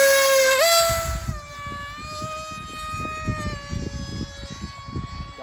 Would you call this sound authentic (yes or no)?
yes